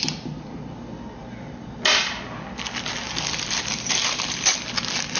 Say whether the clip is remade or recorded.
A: recorded